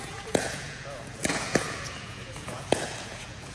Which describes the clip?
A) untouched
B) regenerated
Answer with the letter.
B